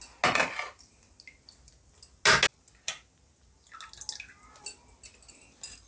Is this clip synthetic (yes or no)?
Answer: no